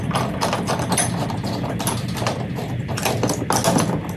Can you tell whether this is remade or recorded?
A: recorded